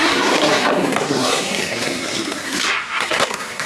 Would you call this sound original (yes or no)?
no